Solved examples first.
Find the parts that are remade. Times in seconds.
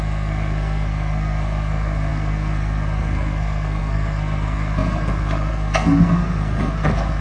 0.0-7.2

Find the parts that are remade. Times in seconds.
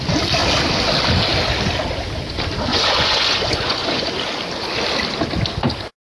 2.7-4.0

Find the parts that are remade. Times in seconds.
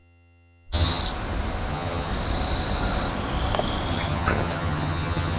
0.0-1.0; 1.7-2.1; 3.9-5.4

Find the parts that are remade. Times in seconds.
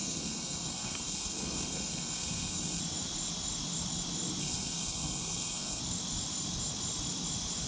0.0-2.8; 4.4-5.8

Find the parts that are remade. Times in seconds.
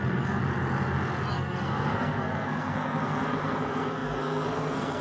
0.0-0.4; 1.3-5.0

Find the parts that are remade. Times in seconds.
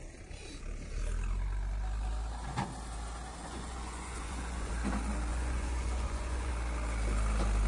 3.4-4.7; 5.3-6.5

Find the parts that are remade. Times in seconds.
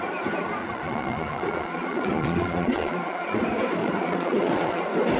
0.6-3.4; 3.8-4.8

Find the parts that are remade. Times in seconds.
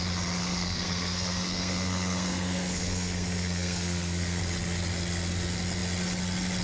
0.4-4.4